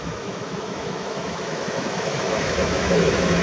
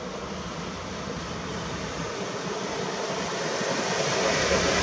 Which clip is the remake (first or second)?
first